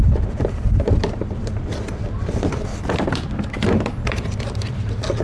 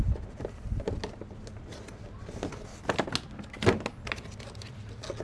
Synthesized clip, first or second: first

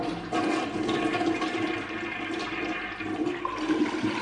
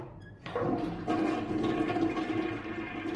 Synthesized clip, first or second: first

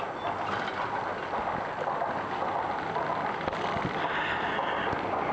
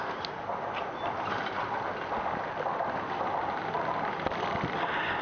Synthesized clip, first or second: second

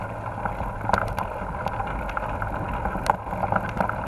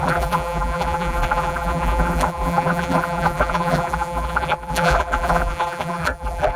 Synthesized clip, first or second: second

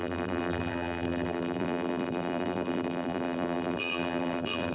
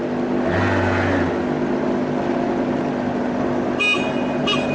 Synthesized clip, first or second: first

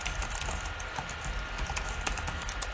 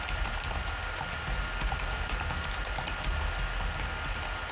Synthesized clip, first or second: first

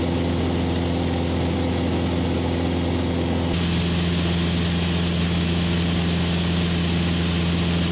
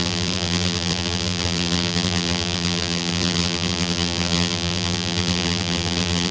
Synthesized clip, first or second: second